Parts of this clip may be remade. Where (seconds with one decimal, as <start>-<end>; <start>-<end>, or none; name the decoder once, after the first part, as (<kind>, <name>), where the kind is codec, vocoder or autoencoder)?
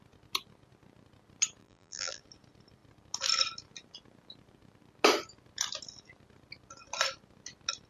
1.6-2.2 (vocoder, BigVGAN v2)